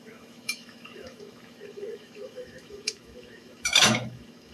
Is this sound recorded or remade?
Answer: remade